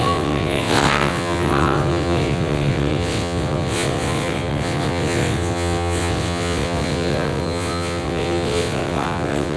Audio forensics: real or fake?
fake